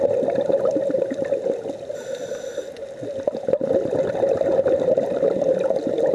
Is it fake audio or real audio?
real